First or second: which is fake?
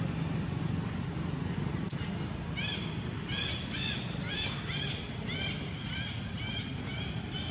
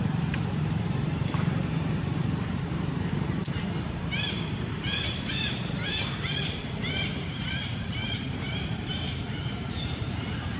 second